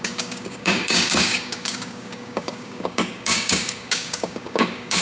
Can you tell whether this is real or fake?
fake